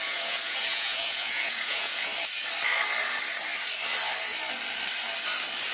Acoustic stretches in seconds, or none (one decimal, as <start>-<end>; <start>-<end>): 2.1-5.7